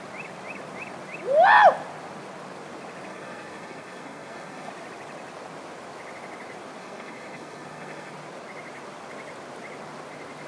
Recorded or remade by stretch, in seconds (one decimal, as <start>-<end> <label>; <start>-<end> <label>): 0.0-3.1 recorded; 3.1-4.7 remade; 4.7-6.8 recorded; 6.8-8.1 remade; 8.1-10.5 recorded